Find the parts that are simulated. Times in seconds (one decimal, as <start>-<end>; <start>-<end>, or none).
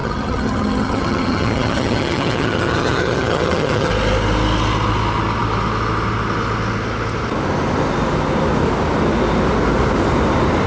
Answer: 0.0-3.9